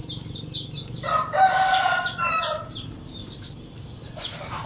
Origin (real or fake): fake